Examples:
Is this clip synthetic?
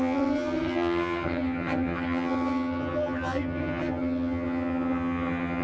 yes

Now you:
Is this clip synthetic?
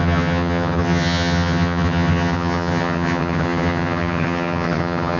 yes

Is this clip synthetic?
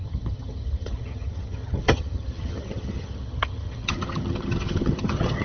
yes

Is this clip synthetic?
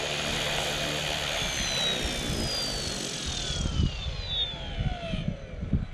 no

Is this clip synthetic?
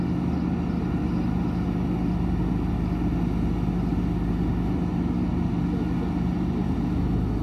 no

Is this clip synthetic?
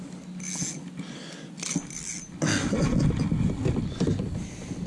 no